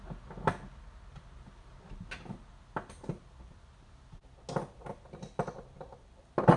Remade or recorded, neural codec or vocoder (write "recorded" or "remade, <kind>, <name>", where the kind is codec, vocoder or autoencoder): recorded